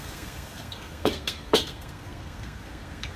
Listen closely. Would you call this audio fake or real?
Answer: fake